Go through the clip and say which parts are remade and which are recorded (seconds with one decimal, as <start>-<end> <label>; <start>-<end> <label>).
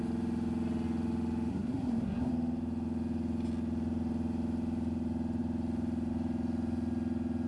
0.0-1.5 recorded; 1.5-2.3 remade; 2.3-7.5 recorded